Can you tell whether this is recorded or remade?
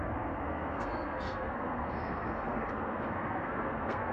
remade